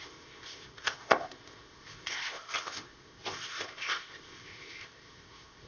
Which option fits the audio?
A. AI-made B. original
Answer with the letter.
A